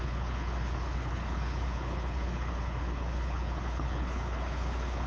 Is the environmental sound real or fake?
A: fake